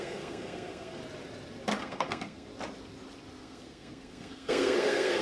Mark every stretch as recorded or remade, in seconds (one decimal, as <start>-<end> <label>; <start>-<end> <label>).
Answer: 0.0-1.0 remade; 1.0-1.8 recorded; 1.8-2.5 remade; 2.5-3.4 recorded; 3.4-5.2 remade